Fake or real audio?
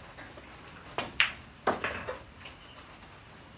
real